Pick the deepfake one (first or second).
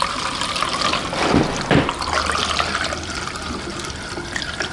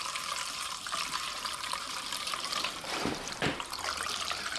second